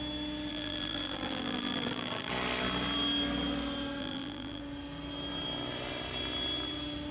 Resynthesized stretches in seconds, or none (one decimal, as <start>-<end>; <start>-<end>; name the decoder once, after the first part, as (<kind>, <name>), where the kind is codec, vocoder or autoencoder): 0.5-2.3 (vocoder, BigVGAN v2); 4.0-4.6